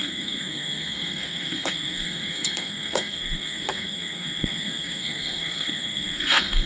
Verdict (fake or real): fake